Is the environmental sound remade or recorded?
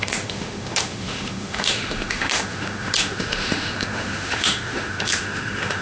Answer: remade